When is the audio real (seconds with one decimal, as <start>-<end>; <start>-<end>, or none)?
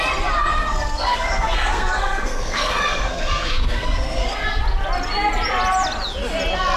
0.0-0.5; 4.6-6.8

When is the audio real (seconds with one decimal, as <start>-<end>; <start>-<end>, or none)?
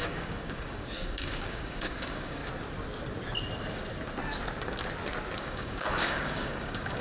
2.4-5.4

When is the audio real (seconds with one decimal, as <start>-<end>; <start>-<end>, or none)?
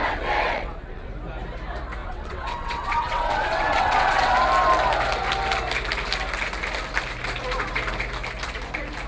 1.1-2.0; 4.3-9.1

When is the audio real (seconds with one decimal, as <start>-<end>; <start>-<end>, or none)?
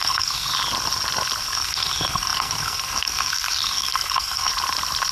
0.5-1.4; 4.5-5.1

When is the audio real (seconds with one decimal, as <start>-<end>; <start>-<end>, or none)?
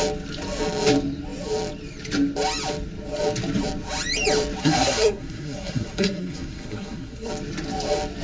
0.0-4.6; 7.3-8.2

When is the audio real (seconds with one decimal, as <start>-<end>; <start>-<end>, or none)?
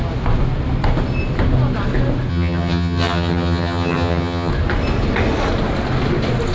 0.0-2.3; 4.5-6.5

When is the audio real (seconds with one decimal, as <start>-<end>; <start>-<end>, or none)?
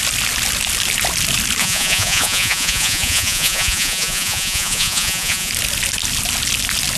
0.0-1.6; 5.5-7.0